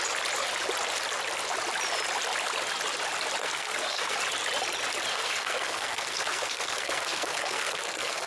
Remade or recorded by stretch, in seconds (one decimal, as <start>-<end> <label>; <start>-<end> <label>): 0.0-3.4 recorded; 3.4-4.2 remade; 4.2-5.1 recorded; 5.1-8.3 remade